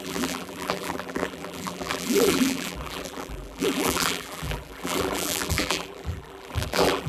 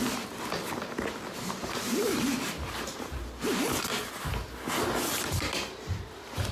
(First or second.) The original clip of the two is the second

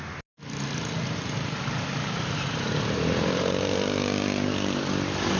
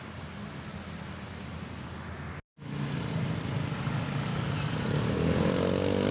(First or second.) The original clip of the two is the second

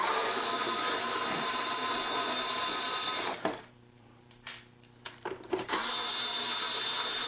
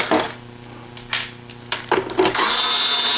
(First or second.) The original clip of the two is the second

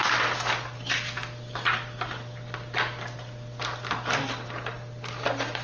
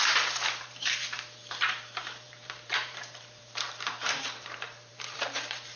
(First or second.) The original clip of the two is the first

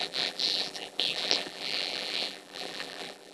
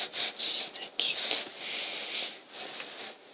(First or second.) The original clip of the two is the second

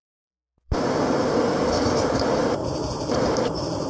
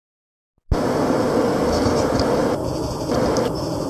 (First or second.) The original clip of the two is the second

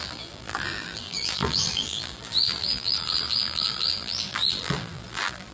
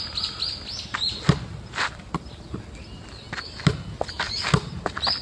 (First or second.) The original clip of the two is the second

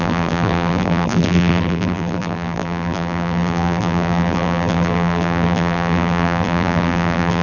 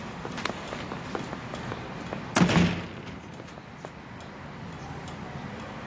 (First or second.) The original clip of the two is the second